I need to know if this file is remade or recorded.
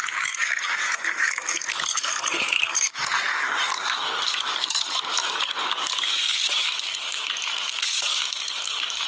remade